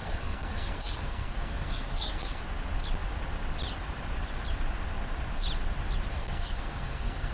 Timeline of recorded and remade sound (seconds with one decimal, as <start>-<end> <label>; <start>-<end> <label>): 0.0-2.4 remade; 2.4-6.1 recorded; 6.1-7.3 remade